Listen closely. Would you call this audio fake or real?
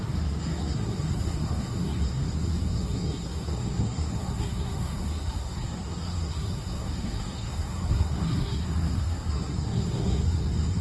fake